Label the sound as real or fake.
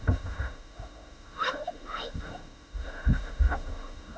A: fake